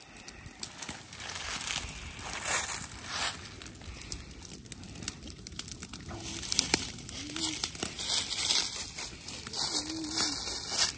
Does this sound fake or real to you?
real